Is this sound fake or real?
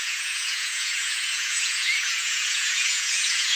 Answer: fake